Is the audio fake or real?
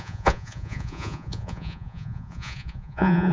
fake